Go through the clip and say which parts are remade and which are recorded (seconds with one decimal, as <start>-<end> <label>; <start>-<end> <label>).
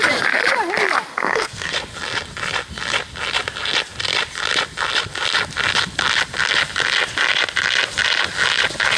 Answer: 0.0-1.1 recorded; 1.1-1.7 remade; 1.7-9.0 recorded